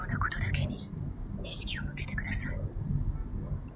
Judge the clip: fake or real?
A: real